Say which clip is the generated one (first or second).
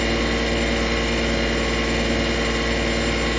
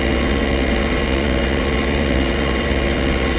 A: second